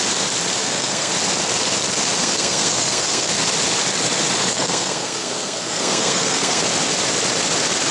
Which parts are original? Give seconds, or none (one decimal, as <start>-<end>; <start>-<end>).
0.0-0.6; 1.1-2.2; 3.3-4.4; 6.6-7.9